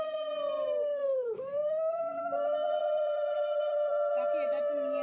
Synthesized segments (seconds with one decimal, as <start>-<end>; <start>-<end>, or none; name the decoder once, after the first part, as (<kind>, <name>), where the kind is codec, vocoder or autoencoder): 1.6-2.2 (vocoder, BigVGAN v2); 2.8-3.9